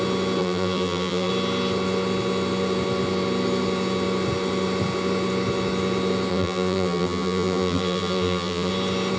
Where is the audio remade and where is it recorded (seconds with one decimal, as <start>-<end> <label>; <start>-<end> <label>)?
0.0-0.4 recorded; 0.4-1.3 remade; 1.3-6.3 recorded; 6.3-8.7 remade; 8.7-9.2 recorded